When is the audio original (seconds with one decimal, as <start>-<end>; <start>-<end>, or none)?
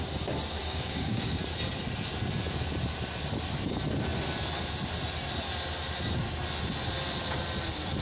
0.0-0.6; 1.4-8.0